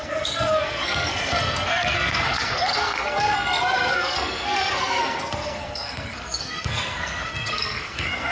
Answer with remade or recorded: remade